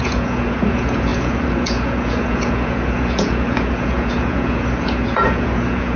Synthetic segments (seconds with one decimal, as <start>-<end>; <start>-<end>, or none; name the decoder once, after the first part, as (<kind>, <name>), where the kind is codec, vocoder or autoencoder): 0.0-6.0 (vocoder, Vocos)